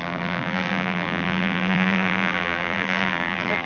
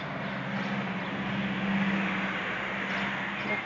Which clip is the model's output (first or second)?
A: first